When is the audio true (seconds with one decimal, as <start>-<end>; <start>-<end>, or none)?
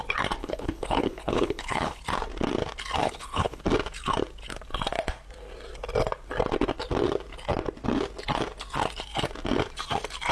0.0-0.4; 2.0-3.0; 3.6-10.3